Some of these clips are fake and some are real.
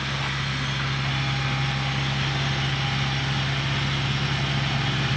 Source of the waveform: real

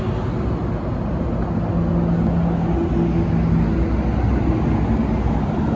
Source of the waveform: real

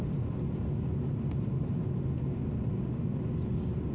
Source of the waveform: real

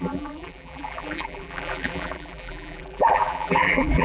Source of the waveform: fake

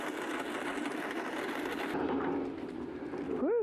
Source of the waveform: real